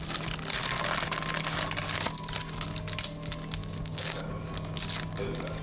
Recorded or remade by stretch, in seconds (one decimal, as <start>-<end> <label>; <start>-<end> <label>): 0.0-3.6 recorded; 3.6-4.5 remade; 4.5-5.6 recorded